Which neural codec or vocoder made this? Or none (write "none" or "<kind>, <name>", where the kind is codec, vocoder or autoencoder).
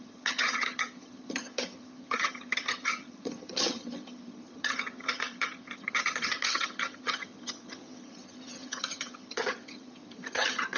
vocoder, HiFi-GAN